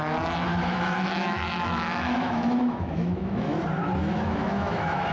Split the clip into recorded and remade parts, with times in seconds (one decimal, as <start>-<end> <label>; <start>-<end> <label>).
0.0-0.5 recorded; 0.5-3.6 remade; 3.6-4.0 recorded; 4.0-5.1 remade